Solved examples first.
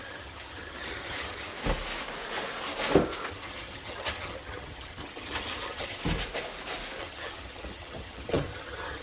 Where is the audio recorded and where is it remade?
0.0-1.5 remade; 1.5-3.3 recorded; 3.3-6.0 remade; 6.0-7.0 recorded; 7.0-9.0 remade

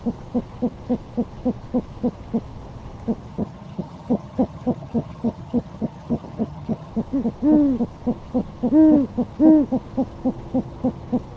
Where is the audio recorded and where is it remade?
0.0-3.3 recorded; 3.3-6.9 remade; 6.9-11.4 recorded